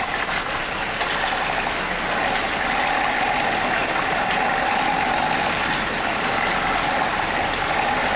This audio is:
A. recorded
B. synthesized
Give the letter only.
A